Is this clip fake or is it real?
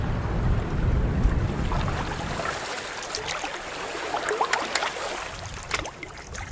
real